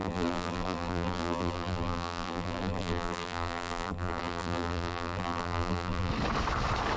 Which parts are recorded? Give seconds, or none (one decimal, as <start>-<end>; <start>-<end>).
6.1-7.0